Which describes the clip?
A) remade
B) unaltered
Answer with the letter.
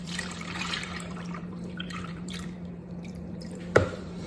A